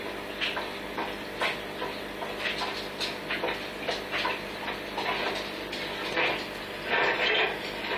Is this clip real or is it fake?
real